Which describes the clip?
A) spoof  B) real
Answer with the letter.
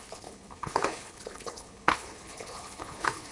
A